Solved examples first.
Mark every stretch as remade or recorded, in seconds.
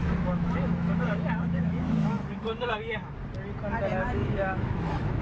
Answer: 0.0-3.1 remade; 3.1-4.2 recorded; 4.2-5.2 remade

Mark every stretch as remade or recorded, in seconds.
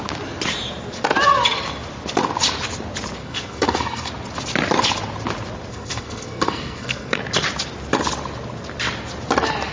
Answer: 0.0-3.2 recorded; 3.2-4.1 remade; 4.1-5.7 recorded; 5.7-7.2 remade; 7.2-9.7 recorded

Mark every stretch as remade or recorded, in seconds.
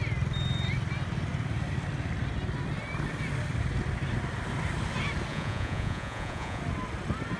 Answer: 0.0-5.3 recorded; 5.3-6.6 remade; 6.6-7.4 recorded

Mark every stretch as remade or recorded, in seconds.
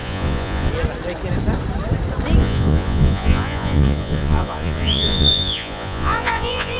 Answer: 0.0-0.7 remade; 0.7-2.4 recorded; 2.4-6.8 remade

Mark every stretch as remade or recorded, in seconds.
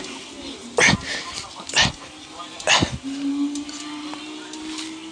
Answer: 0.0-5.1 recorded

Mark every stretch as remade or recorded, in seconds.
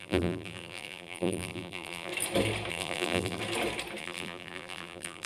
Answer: 0.0-2.1 remade; 2.1-2.7 recorded; 2.7-3.4 remade; 3.4-4.0 recorded; 4.0-5.3 remade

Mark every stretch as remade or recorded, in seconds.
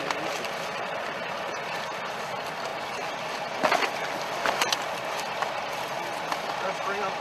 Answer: 0.0-7.2 recorded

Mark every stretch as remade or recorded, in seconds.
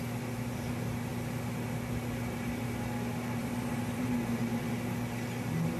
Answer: 0.0-3.4 recorded; 3.4-4.0 remade; 4.0-5.8 recorded